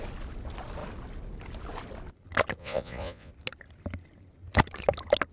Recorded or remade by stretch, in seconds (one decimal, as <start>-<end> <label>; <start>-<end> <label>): 0.0-2.6 recorded; 2.6-3.3 remade; 3.3-5.3 recorded